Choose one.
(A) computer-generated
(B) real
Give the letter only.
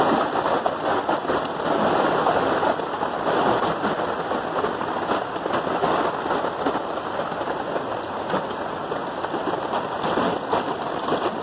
B